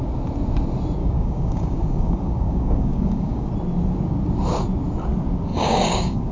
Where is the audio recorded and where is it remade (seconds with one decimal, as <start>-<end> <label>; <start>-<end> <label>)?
0.0-1.0 recorded; 1.0-3.5 remade; 3.5-5.5 recorded; 5.5-6.3 remade